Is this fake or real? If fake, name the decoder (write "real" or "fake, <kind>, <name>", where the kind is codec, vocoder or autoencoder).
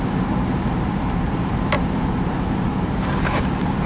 fake, vocoder, BigVGAN v2